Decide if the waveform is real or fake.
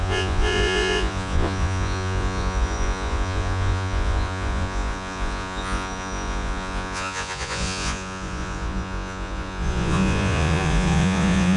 fake